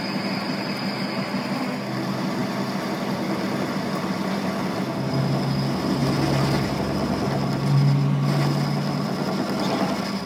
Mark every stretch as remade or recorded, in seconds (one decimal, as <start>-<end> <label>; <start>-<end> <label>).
0.0-10.3 recorded

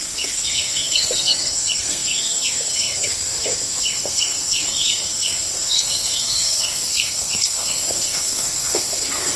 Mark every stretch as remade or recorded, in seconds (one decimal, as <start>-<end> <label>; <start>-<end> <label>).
0.0-9.4 remade

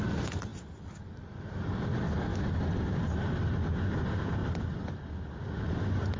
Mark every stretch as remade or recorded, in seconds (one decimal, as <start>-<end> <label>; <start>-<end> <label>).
0.0-6.2 recorded

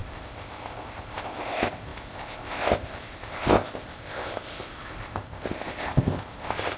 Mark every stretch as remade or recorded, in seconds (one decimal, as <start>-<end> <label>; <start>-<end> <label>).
0.0-6.8 remade

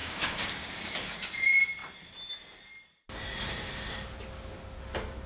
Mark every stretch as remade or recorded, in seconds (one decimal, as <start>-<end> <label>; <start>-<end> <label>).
0.0-0.8 remade; 0.8-5.3 recorded